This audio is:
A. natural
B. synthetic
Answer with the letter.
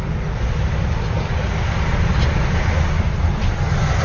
A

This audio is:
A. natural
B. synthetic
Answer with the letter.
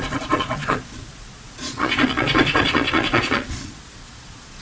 B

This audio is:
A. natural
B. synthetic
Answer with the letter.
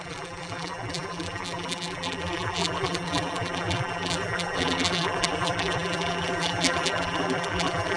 B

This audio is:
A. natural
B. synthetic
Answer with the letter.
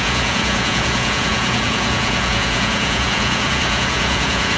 B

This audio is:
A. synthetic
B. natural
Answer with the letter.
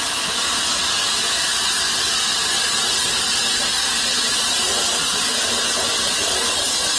B